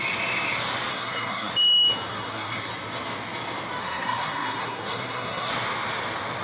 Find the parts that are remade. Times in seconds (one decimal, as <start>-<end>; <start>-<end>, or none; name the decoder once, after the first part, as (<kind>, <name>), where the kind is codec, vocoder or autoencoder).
0.9-1.5 (codec, SNAC); 2.1-2.7; 3.8-5.5